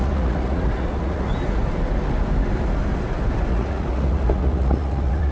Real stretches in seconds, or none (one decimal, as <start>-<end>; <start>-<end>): 1.3-3.5